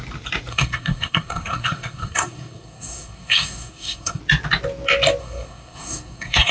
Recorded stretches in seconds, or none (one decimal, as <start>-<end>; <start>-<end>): 0.0-0.5; 4.2-5.2